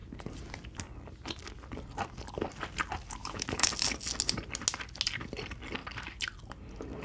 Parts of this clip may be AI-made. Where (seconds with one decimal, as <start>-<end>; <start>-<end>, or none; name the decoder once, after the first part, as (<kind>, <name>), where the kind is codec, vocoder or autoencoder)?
3.2-3.7 (autoencoder, DAC-VAE)